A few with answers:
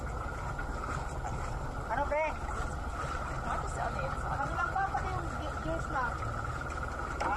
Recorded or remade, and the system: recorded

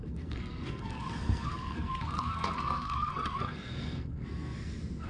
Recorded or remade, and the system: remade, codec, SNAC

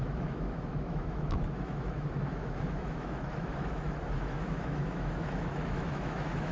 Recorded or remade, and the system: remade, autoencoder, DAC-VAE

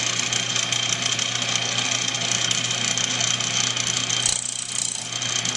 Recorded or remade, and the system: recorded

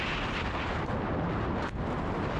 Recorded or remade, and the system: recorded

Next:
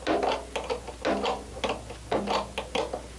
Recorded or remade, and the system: recorded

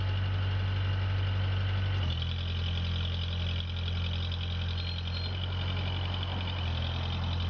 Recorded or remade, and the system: recorded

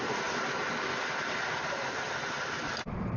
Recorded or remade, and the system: recorded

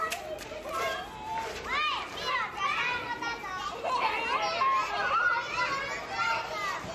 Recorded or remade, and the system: recorded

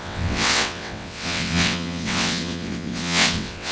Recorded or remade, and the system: remade, vocoder, WaveNeXt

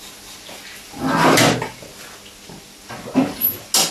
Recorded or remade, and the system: recorded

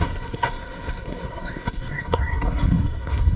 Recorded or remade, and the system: remade, codec, SNAC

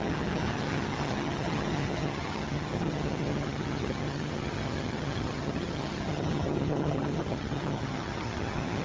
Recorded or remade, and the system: remade, vocoder, HiFi-GAN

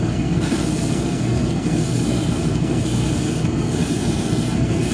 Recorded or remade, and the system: remade, codec, SNAC